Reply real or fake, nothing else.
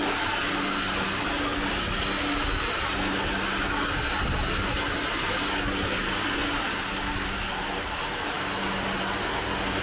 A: real